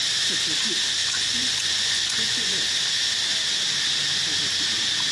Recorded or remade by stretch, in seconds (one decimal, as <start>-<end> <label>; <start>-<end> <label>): 0.0-1.0 recorded; 1.0-2.6 remade; 2.6-5.1 recorded